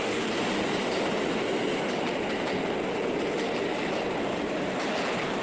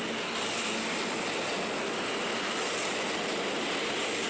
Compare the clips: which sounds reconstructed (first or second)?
first